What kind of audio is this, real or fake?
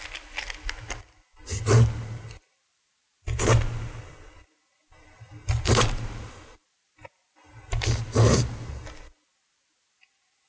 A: real